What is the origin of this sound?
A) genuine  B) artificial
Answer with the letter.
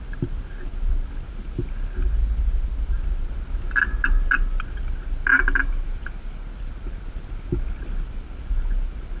A